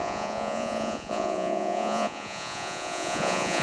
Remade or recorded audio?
remade